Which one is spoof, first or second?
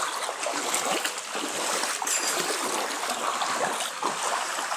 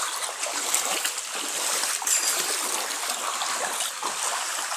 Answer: second